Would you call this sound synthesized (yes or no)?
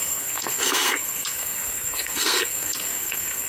yes